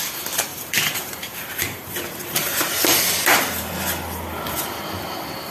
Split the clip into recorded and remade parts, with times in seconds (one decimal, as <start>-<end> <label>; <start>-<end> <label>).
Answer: 0.0-0.5 recorded; 0.5-3.8 remade; 3.8-5.5 recorded